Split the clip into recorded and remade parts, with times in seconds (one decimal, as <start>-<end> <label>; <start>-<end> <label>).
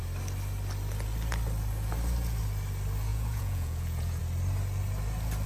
0.0-3.1 recorded; 3.1-4.2 remade; 4.2-5.5 recorded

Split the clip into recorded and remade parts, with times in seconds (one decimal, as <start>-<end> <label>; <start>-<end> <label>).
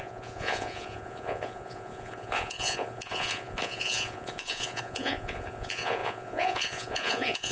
0.0-7.5 remade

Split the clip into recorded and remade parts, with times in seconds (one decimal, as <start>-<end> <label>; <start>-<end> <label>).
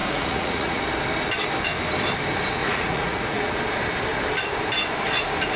0.0-0.8 remade; 0.8-2.6 recorded; 2.6-3.6 remade; 3.6-5.6 recorded